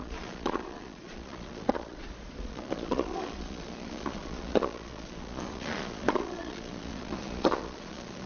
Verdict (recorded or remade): remade